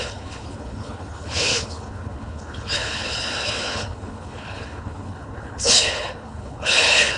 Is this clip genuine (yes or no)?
no